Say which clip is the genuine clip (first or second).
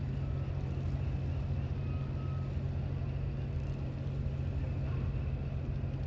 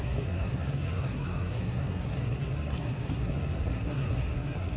first